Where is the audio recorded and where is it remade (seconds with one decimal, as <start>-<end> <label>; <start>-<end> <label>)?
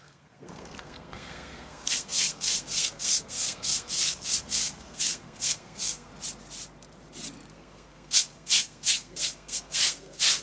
0.0-6.1 remade; 6.1-7.5 recorded; 7.5-10.4 remade